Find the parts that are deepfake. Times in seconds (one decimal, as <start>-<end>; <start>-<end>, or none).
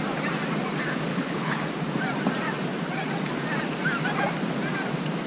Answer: 1.1-1.6